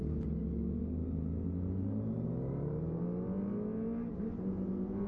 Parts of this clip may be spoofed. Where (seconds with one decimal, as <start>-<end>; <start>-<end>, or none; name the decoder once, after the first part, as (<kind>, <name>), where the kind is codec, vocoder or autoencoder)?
none